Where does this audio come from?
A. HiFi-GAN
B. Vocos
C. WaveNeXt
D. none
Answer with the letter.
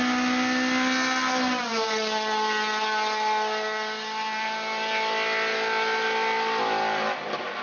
D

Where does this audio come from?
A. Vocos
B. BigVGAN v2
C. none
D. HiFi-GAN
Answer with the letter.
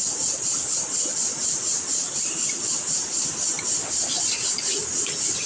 C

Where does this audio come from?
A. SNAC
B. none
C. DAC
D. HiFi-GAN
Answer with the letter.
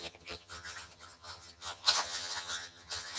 D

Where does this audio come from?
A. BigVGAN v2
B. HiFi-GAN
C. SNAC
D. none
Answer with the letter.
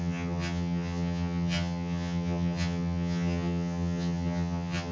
B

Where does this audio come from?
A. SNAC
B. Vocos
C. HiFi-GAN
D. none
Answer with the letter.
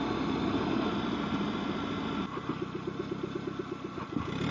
D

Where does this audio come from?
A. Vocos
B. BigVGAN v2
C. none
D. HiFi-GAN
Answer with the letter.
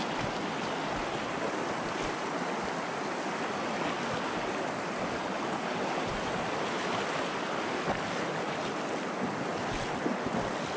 C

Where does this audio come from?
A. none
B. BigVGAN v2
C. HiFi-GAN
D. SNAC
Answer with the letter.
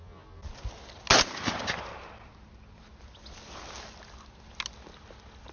A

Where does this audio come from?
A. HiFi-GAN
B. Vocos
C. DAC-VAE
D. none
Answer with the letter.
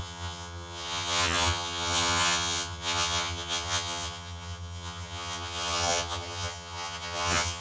A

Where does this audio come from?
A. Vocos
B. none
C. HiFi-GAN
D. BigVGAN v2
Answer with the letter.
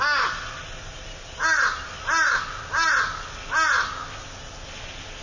B